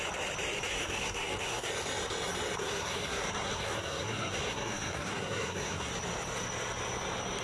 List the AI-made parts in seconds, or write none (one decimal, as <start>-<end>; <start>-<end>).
0.7-1.7; 2.6-5.9

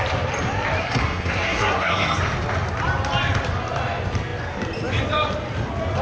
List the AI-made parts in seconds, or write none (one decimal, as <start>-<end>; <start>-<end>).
0.8-2.2

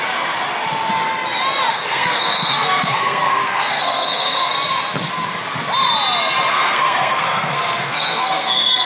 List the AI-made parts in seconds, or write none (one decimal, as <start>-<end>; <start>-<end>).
1.7-4.5; 6.5-8.9

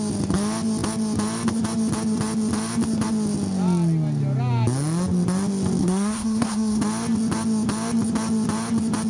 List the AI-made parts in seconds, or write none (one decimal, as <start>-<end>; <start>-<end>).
5.8-6.8

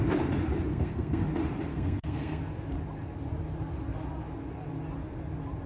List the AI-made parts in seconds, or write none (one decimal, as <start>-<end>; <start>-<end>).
0.7-1.2; 1.7-2.4

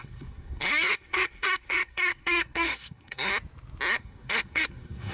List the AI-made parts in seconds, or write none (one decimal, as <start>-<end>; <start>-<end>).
0.0-3.3; 3.9-5.1

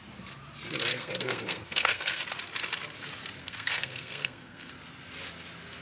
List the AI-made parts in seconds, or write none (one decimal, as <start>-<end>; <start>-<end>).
0.9-2.2; 3.4-4.7